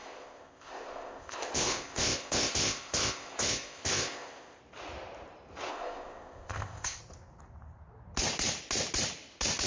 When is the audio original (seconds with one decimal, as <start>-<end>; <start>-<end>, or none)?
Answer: 4.6-5.7; 7.0-9.7